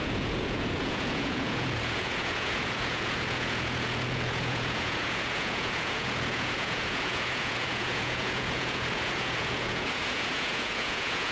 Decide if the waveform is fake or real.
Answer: fake